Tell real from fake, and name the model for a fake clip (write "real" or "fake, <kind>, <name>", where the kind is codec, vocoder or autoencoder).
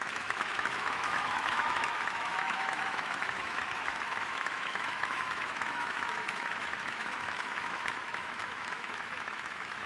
fake, autoencoder, DAC-VAE